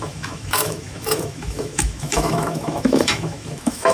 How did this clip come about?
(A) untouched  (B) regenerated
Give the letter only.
B